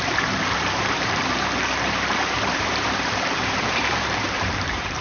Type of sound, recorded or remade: remade